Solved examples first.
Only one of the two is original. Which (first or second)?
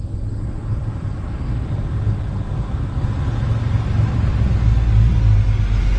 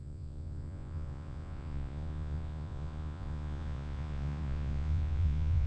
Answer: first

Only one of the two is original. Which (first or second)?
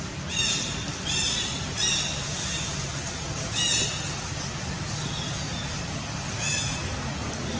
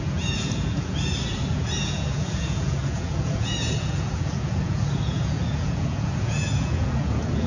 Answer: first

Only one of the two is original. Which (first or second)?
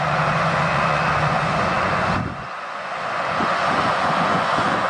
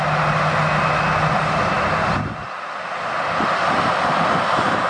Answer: second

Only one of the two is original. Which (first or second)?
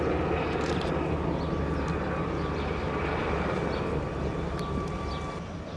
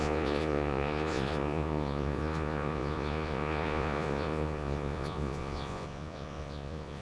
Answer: first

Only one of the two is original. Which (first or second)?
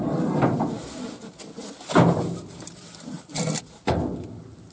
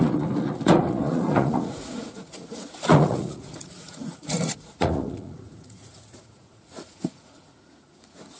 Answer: first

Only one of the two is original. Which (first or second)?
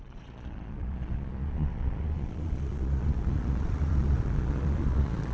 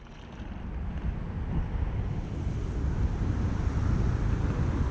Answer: second